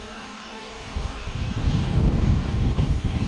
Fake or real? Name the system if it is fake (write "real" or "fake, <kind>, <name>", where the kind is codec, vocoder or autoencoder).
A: fake, codec, DAC